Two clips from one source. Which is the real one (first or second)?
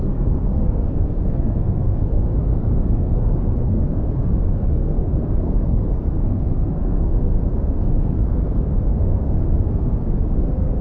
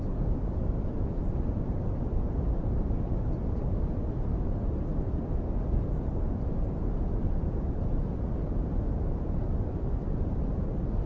second